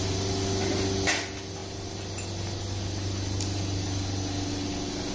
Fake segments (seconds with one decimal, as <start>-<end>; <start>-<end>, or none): none